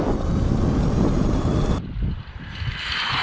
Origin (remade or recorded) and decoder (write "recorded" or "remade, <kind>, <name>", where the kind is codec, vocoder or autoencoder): recorded